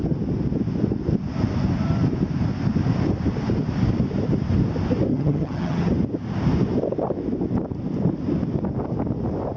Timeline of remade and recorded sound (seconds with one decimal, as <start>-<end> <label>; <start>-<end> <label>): 0.0-5.1 recorded; 5.1-5.9 remade; 5.9-9.6 recorded